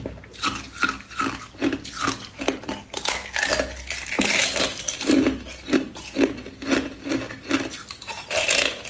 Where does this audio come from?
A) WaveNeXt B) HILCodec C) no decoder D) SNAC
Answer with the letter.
C